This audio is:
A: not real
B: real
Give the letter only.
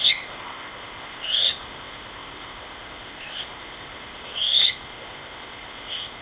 A